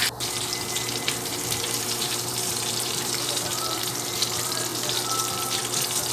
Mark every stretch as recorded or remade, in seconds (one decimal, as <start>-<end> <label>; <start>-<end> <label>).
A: 0.0-1.3 recorded; 1.3-4.3 remade; 4.3-6.1 recorded